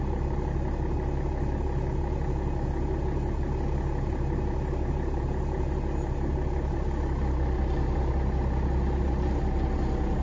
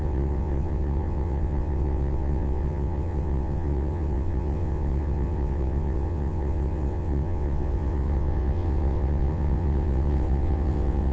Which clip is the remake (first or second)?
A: second